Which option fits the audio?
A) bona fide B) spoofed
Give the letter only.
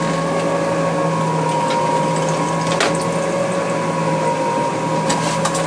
A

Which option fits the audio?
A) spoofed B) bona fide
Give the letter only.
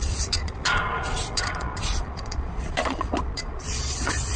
A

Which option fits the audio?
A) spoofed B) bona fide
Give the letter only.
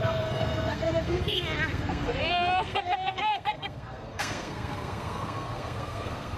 A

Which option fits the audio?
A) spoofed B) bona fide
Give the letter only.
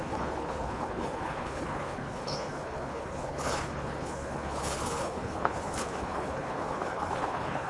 A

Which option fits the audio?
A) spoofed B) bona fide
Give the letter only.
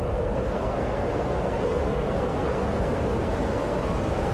A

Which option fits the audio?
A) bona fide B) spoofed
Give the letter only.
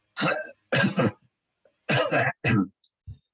A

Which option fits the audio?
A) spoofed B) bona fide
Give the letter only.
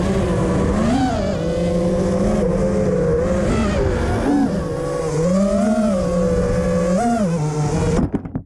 B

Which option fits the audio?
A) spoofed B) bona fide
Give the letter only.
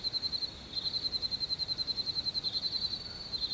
B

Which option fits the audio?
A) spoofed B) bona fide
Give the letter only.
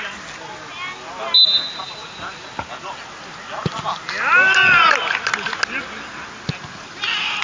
B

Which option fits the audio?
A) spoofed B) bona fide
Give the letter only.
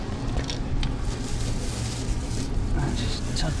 B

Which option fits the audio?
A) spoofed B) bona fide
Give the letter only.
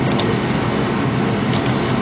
B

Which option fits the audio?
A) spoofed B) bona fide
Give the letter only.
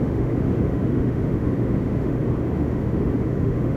A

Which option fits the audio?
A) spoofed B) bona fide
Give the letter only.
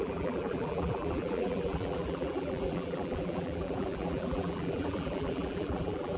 A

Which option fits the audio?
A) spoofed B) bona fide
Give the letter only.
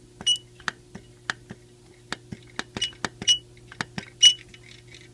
B